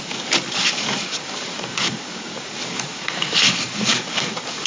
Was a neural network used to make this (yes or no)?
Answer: yes